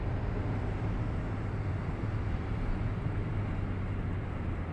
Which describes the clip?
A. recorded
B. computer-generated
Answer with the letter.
A